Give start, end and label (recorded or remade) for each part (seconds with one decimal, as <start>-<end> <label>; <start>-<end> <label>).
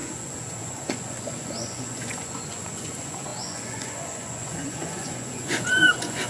0.0-6.3 remade